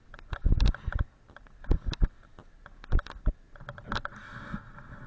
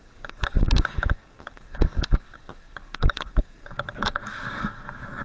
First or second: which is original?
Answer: first